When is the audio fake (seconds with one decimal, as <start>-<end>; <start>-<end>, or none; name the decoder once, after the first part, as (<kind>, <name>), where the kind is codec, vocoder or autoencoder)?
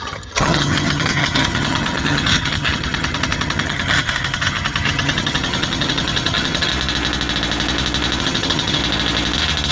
0.0-6.7 (vocoder, HiFi-GAN); 8.2-8.8